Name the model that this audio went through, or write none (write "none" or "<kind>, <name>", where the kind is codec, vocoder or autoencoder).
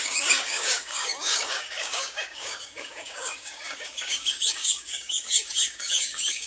codec, DAC